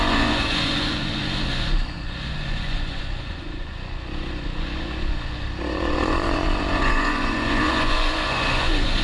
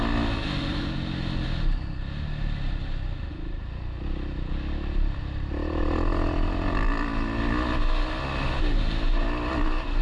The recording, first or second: second